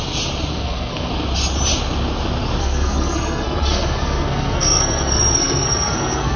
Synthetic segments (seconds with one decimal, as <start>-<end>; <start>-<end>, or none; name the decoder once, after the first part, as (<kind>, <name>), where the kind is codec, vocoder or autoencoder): 0.5-1.1 (codec, SNAC); 2.6-6.4